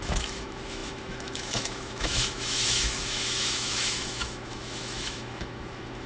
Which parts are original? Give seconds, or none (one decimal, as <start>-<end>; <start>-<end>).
none